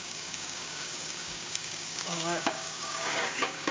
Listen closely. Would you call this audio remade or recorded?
remade